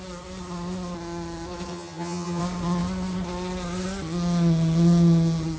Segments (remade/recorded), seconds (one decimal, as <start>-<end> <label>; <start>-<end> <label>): 0.0-1.7 recorded; 1.7-2.4 remade; 2.4-5.6 recorded